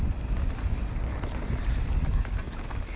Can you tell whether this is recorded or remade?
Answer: recorded